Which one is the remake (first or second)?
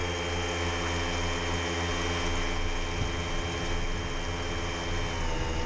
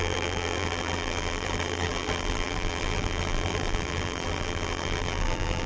second